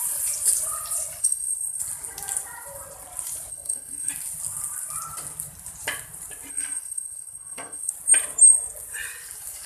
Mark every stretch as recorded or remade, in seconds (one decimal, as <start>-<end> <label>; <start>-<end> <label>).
0.0-1.2 recorded; 1.2-1.8 remade; 1.8-3.5 recorded; 3.5-4.1 remade; 4.1-6.5 recorded; 6.5-7.9 remade; 7.9-9.7 recorded